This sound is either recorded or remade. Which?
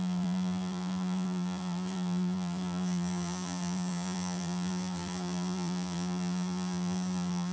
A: remade